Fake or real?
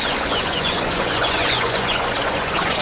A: fake